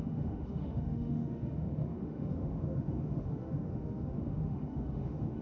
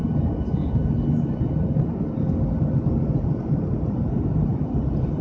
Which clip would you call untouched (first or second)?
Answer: second